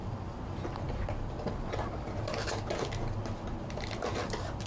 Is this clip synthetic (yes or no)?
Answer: no